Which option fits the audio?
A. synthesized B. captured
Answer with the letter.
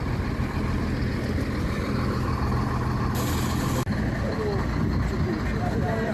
B